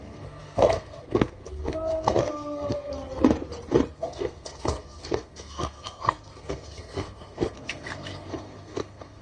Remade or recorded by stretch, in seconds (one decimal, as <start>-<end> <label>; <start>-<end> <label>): 0.0-2.9 remade; 2.9-3.9 recorded; 3.9-9.2 remade